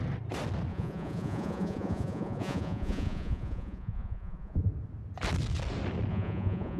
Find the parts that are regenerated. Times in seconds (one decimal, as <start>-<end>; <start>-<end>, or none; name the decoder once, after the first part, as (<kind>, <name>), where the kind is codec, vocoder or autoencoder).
0.7-4.7 (vocoder, Vocos); 6.1-6.8